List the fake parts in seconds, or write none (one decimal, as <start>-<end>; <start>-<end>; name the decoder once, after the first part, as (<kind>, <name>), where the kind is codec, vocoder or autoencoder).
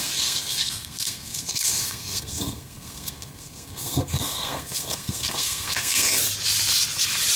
0.0-6.2 (codec, SNAC)